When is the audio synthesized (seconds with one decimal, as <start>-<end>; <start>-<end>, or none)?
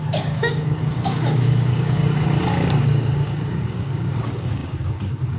0.0-2.0; 2.8-5.4